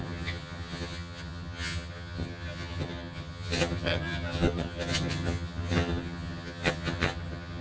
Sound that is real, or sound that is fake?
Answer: fake